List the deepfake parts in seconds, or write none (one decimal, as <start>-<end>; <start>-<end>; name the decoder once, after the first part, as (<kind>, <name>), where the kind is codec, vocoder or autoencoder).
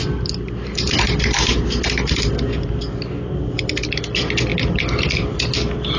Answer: none